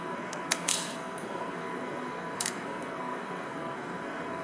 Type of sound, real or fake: fake